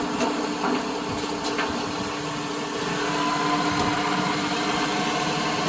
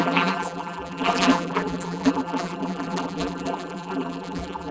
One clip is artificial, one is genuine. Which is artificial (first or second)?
second